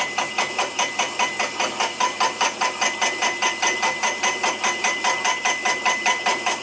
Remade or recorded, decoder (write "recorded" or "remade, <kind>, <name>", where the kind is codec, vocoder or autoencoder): recorded